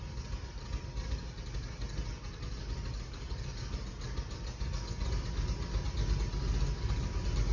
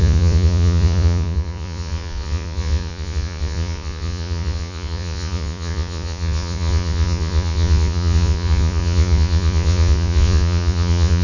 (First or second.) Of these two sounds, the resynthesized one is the second